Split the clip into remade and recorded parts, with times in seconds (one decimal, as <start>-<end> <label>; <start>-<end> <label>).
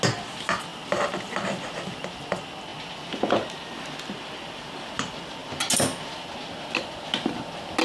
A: 0.0-7.8 recorded